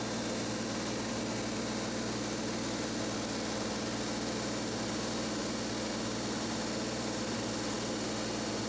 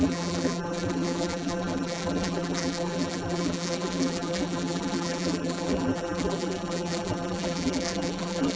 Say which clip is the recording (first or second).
first